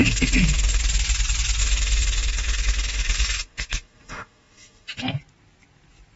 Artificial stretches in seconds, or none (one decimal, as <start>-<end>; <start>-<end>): 0.0-0.8; 1.6-5.2